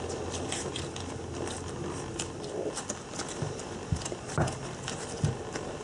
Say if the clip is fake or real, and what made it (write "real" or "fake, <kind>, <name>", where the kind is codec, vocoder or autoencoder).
real